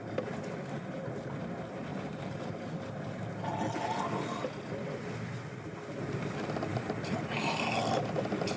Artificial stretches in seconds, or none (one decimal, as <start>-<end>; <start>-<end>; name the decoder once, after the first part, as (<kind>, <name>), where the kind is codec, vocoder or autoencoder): 1.9-2.5 (vocoder, BigVGAN v2); 6.7-7.8